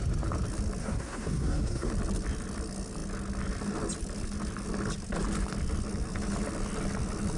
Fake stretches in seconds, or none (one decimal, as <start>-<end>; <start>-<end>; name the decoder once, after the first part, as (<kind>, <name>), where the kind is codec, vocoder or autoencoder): 0.8-1.9 (codec, SNAC)